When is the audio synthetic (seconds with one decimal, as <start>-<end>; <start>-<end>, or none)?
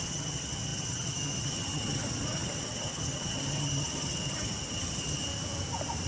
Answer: 0.0-5.2